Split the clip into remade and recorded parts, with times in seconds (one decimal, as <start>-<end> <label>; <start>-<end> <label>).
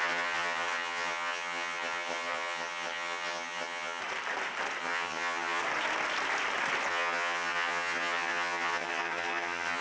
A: 0.0-4.0 remade; 4.0-4.8 recorded; 4.8-5.6 remade; 5.6-6.9 recorded; 6.9-9.8 remade